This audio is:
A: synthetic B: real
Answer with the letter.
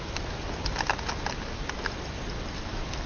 B